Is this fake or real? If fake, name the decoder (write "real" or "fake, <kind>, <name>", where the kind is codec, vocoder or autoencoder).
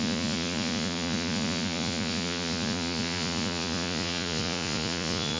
fake, vocoder, Vocos